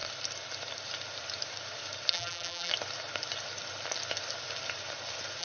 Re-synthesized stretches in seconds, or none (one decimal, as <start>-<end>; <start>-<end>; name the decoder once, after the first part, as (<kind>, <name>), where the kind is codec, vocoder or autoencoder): 2.1-2.7 (vocoder, BigVGAN v2)